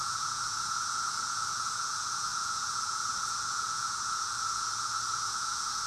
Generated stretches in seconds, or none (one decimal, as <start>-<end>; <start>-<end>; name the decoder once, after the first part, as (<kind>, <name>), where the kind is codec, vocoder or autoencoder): 0.0-5.9 (vocoder, Vocos)